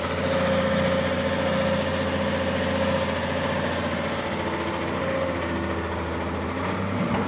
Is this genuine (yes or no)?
yes